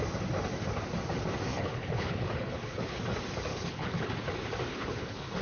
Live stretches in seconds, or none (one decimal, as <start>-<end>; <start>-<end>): 0.0-1.5; 3.0-3.5; 4.1-4.7